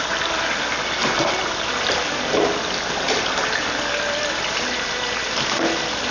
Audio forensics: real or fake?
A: real